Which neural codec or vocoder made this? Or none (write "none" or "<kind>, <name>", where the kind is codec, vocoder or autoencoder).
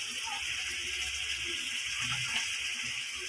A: none